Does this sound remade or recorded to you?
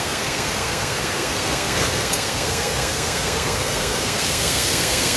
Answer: remade